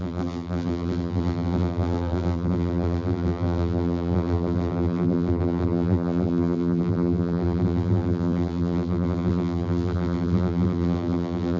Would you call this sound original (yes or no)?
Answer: no